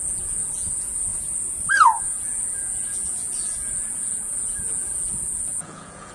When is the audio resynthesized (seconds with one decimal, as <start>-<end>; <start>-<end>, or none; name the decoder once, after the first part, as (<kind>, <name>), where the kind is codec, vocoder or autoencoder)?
0.0-1.1 (vocoder, Vocos); 2.0-6.1